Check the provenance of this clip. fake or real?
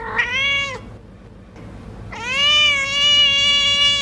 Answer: real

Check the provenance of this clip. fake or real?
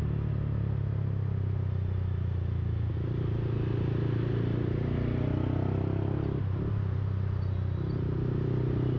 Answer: real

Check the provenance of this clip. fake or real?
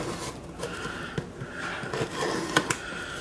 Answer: real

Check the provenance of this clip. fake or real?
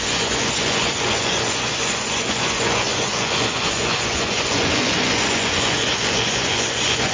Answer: fake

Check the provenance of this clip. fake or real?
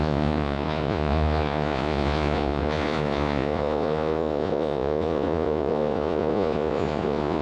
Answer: fake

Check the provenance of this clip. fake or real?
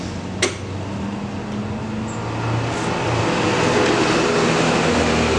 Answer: real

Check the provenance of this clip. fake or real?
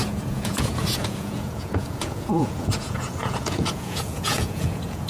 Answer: fake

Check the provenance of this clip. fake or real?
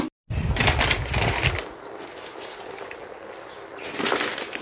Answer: real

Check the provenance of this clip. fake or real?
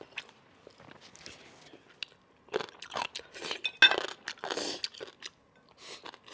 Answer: real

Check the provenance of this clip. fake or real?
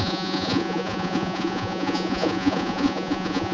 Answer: fake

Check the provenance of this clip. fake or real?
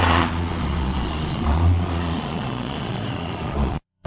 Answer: fake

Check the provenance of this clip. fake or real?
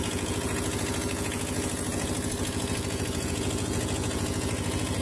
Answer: fake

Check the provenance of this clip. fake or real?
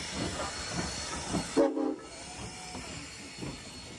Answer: real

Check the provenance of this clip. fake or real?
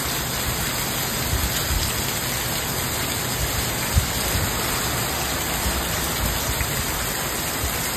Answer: real